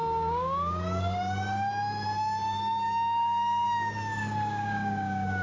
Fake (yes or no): yes